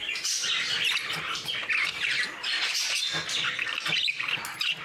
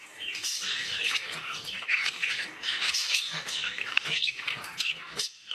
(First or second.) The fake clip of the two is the second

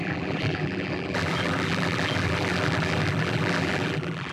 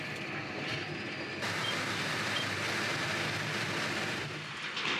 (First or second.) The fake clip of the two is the first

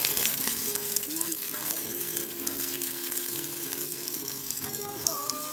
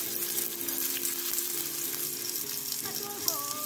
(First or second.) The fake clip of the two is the first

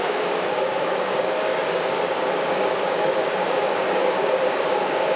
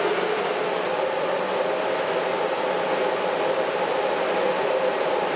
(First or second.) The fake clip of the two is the first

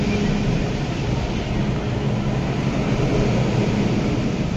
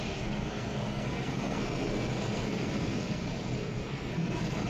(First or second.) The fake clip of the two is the second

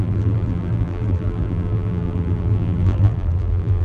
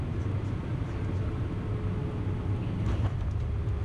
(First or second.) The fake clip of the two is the first